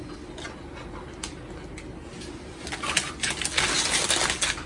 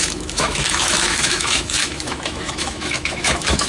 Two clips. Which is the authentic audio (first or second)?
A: first